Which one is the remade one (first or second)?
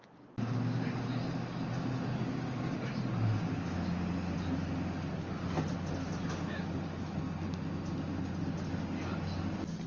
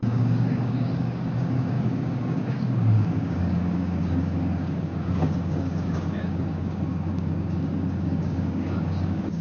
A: second